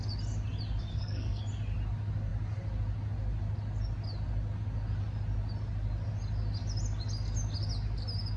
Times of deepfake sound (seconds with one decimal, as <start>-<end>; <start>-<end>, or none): 0.9-1.4